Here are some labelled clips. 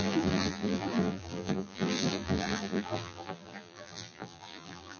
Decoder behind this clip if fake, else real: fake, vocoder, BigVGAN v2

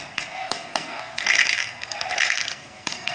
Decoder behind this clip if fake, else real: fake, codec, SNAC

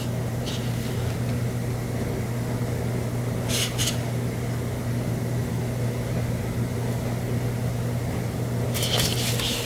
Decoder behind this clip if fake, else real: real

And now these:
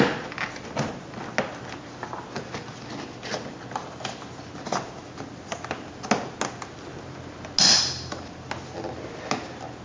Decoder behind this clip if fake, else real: real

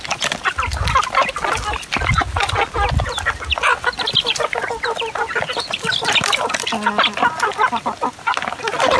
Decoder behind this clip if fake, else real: real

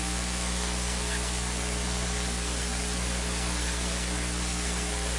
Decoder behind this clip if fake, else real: fake, codec, SNAC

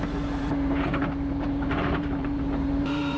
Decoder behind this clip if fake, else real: fake, vocoder, BigVGAN v2